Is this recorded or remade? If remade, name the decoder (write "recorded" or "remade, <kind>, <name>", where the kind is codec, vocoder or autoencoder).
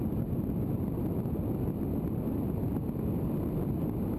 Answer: recorded